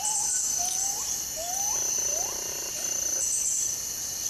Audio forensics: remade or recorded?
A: recorded